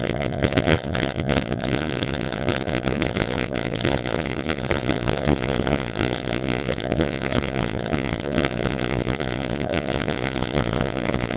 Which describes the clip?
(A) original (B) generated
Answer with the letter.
B